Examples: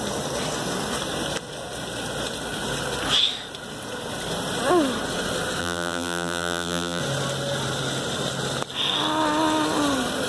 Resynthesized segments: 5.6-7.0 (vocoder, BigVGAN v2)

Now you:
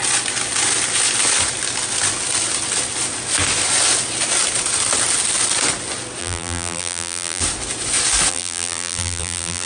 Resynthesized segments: 6.2-7.4 (vocoder, BigVGAN v2); 8.3-9.7

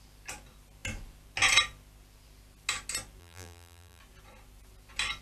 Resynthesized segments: 3.2-4.0 (vocoder, BigVGAN v2)

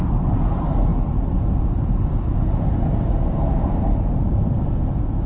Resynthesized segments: none

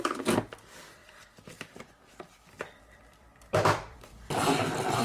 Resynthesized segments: 1.0-4.0 (vocoder, BigVGAN v2)

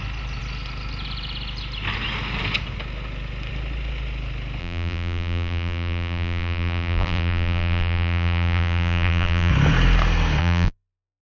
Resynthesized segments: 4.6-9.5 (vocoder, BigVGAN v2); 10.4-11.2

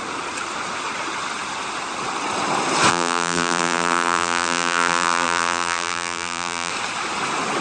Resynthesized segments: 2.9-6.7 (vocoder, BigVGAN v2)

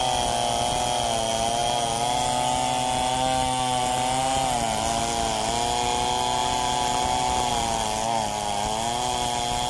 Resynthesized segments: none